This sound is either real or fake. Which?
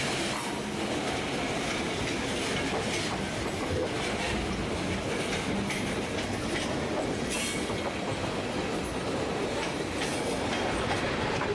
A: real